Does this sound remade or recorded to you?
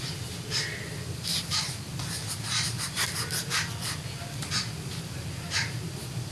remade